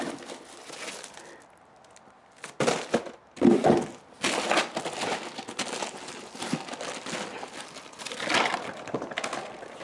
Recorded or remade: recorded